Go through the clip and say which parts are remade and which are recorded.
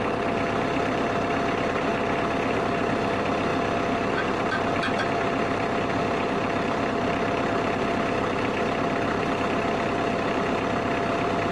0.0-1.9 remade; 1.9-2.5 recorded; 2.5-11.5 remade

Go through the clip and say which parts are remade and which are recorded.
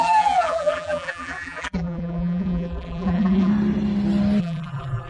0.0-3.5 remade; 3.5-4.4 recorded; 4.4-5.1 remade